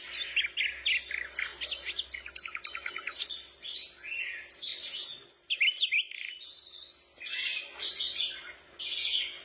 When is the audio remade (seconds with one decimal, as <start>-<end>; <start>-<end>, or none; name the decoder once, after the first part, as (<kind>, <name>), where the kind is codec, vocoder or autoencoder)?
none